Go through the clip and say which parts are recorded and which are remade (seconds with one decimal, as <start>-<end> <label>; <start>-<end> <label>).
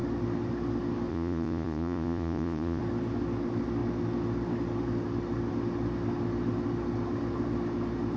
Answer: 0.0-1.1 recorded; 1.1-2.8 remade; 2.8-8.2 recorded